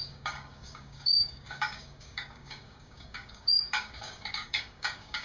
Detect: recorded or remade remade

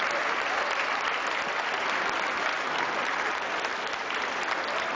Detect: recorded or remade recorded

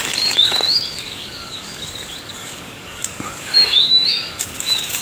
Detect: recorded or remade remade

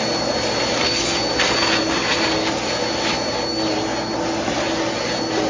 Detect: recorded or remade recorded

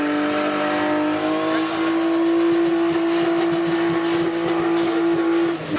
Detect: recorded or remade recorded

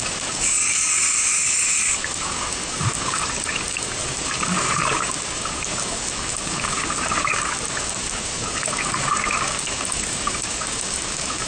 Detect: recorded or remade remade